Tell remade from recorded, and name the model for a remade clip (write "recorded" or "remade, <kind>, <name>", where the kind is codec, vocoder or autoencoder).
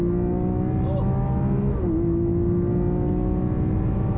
recorded